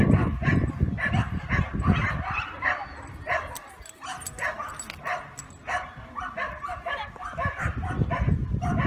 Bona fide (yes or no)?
yes